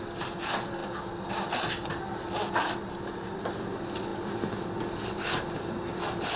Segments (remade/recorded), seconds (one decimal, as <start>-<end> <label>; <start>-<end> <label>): 0.0-6.4 recorded